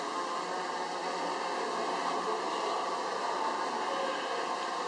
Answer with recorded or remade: recorded